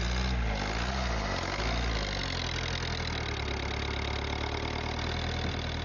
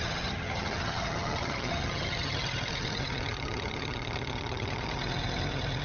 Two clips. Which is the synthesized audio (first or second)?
second